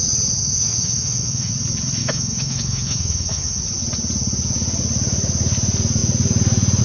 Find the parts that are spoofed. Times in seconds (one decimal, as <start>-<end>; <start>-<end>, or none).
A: 0.4-1.5; 2.0-3.6